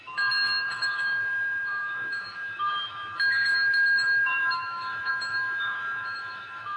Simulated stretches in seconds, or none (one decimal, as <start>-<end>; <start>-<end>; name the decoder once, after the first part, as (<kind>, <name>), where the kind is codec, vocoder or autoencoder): 0.0-6.8 (autoencoder, DAC-VAE)